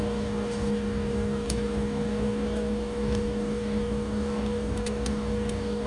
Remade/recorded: remade